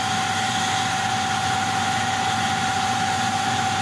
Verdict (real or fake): real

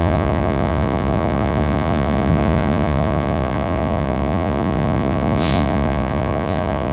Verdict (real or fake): fake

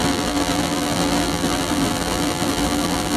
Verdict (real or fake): fake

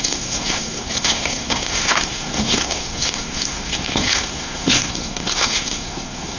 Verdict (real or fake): fake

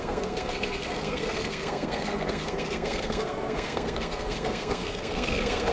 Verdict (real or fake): fake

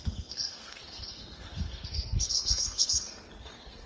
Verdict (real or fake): fake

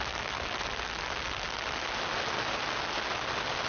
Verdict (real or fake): real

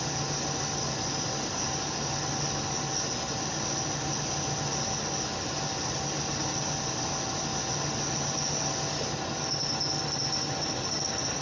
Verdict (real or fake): real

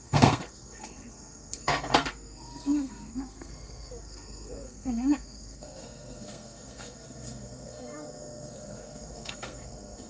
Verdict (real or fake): fake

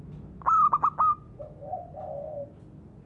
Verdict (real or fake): real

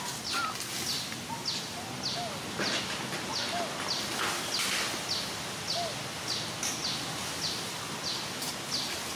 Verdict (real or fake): real